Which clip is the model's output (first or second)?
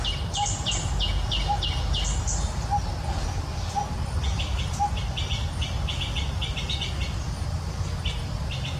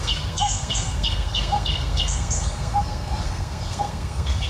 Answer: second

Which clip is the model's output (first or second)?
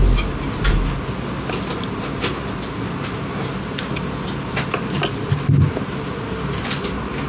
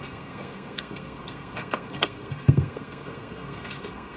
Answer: second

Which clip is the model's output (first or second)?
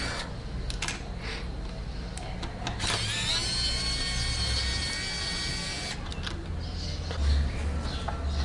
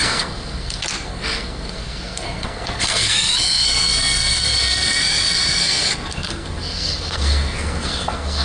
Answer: second